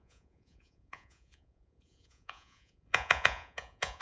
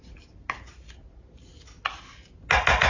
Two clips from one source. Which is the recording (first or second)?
second